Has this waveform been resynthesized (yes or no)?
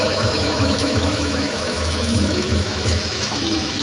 yes